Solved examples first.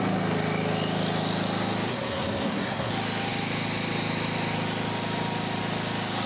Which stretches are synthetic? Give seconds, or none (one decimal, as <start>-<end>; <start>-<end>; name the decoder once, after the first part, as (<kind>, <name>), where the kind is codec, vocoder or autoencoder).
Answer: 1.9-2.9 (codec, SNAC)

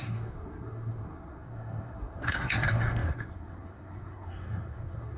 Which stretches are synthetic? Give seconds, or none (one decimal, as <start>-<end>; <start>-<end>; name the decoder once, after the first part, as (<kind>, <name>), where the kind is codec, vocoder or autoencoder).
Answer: 0.0-5.2 (codec, SNAC)

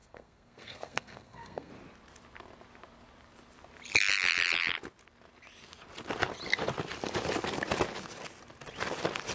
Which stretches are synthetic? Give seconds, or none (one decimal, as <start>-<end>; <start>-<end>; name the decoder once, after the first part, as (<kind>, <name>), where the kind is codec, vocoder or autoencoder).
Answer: 0.0-1.7 (codec, SNAC)

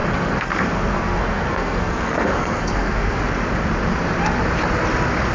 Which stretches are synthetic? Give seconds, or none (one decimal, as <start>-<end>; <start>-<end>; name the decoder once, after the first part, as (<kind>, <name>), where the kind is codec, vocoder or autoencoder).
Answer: 0.0-3.2 (codec, SNAC)

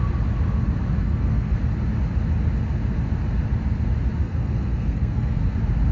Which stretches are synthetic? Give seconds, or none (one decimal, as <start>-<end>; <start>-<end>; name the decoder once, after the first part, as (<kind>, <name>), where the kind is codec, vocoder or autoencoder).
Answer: 1.0-1.6 (codec, SNAC); 4.2-5.4

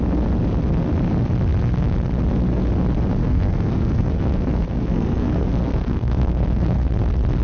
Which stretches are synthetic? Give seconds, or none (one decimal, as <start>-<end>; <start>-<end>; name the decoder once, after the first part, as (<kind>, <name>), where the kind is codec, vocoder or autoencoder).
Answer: 3.2-6.9 (codec, SNAC)

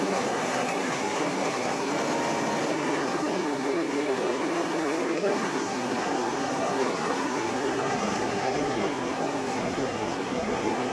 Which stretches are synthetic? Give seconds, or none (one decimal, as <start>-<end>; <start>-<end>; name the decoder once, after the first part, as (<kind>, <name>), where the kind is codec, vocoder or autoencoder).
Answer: 0.0-1.9 (codec, SNAC); 2.7-10.9